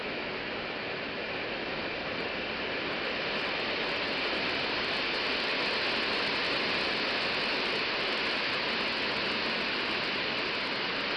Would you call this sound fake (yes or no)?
no